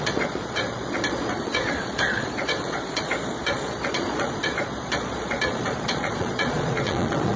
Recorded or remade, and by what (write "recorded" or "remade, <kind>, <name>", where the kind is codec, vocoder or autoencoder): remade, vocoder, Vocos